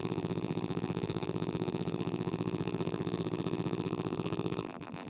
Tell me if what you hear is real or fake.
fake